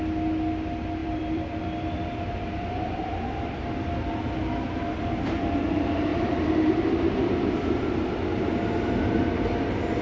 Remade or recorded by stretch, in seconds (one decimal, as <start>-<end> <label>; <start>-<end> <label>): 0.0-1.0 recorded; 1.0-3.0 remade; 3.0-6.1 recorded; 6.1-8.1 remade; 8.1-10.0 recorded